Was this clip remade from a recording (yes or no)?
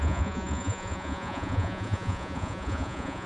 yes